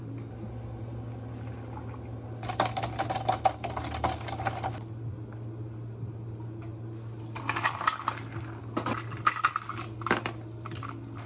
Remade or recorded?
recorded